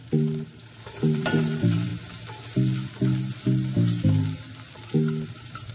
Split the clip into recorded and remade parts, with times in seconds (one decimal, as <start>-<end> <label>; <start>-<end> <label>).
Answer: 0.0-1.9 remade; 1.9-5.3 recorded; 5.3-5.7 remade